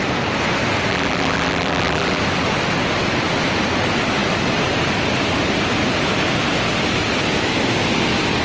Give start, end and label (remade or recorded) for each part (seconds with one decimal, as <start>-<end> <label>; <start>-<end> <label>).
0.0-0.9 recorded; 0.9-2.2 remade; 2.2-8.4 recorded